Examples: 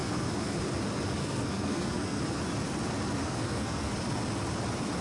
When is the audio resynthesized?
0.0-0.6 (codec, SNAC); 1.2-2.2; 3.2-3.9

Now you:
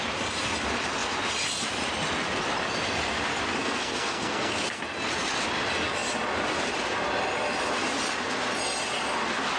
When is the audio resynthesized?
3.6-4.8 (codec, SNAC)

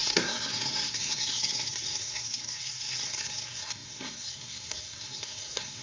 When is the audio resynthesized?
0.0-5.8 (codec, SNAC)

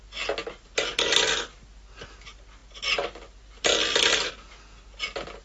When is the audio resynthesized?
none

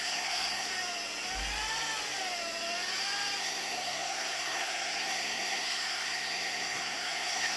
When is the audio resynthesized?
0.0-0.7 (codec, SNAC); 3.4-7.6

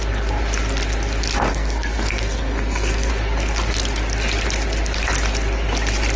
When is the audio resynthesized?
1.5-3.1 (codec, SNAC)

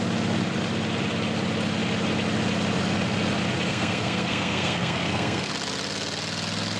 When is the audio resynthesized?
3.7-5.5 (codec, SNAC)